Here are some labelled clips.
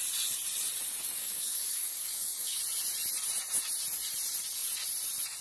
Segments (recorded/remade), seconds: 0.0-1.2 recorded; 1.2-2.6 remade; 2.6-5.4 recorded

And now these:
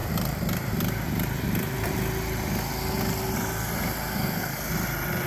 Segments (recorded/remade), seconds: 0.0-4.2 recorded; 4.2-4.7 remade; 4.7-5.3 recorded

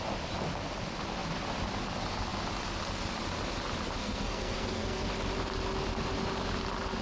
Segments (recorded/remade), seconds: 0.0-4.0 recorded; 4.0-5.1 remade; 5.1-7.0 recorded

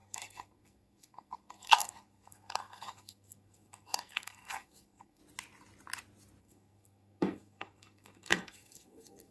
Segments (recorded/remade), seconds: 0.0-5.2 remade; 5.2-6.4 recorded; 6.4-9.3 remade

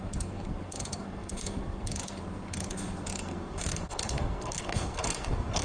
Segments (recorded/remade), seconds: 0.0-5.6 remade

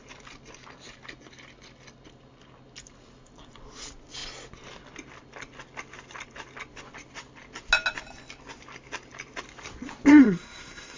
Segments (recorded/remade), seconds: 0.0-10.1 recorded; 10.1-11.0 remade

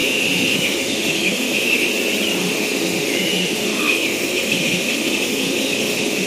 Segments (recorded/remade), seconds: 0.0-1.9 remade; 1.9-2.4 recorded; 2.4-6.3 remade